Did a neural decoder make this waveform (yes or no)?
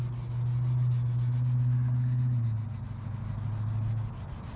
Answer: no